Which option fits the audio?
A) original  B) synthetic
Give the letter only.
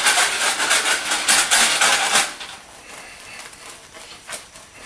A